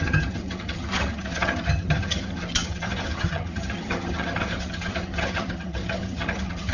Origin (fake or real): fake